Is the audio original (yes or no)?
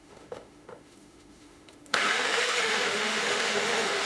no